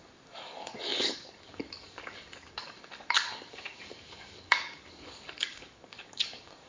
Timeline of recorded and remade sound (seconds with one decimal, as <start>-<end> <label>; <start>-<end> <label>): 0.0-6.7 remade